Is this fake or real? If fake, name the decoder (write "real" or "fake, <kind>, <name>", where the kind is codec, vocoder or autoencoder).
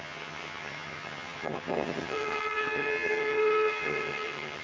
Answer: fake, vocoder, HiFi-GAN